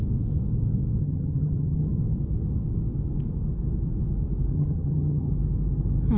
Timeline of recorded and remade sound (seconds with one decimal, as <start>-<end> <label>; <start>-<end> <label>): 0.0-1.0 recorded; 1.0-2.0 remade; 2.0-4.5 recorded; 4.5-5.3 remade; 5.3-6.2 recorded